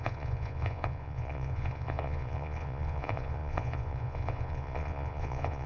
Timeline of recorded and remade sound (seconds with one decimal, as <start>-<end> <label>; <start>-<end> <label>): 0.0-5.7 remade